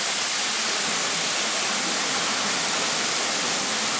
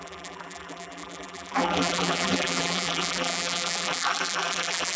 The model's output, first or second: second